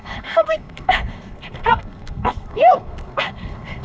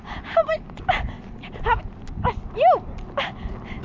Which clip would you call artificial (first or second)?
first